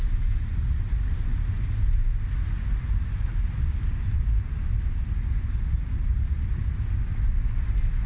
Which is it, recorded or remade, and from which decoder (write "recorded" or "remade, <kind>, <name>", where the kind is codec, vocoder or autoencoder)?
recorded